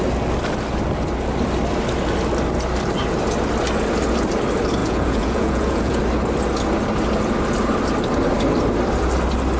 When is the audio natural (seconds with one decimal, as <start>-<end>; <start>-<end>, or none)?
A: 0.0-4.8; 6.0-9.6